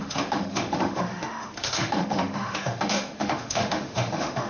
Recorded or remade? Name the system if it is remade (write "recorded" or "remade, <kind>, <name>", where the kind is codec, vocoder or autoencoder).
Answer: remade, autoencoder, DAC-VAE